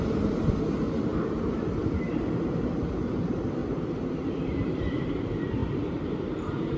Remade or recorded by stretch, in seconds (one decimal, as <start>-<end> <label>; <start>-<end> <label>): 0.0-3.6 remade; 3.6-4.4 recorded; 4.4-6.8 remade